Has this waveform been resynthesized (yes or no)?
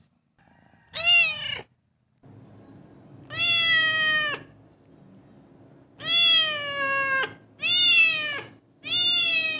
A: no